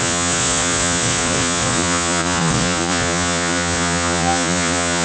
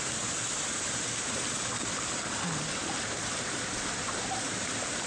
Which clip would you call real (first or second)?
second